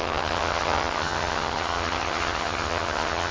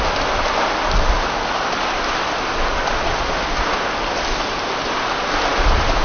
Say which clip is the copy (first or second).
first